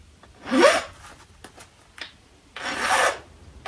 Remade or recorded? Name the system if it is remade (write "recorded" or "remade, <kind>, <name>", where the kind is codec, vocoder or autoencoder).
recorded